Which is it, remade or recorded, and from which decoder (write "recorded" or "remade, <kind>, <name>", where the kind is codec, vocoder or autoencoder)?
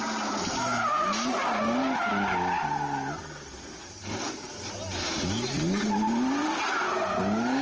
recorded